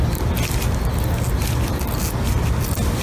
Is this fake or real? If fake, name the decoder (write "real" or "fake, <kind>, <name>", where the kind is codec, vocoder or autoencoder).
real